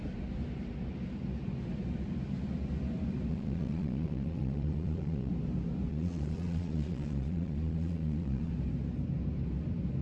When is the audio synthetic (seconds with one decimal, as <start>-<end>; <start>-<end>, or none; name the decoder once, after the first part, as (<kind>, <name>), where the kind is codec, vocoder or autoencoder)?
3.3-5.3 (vocoder, Vocos); 5.9-8.5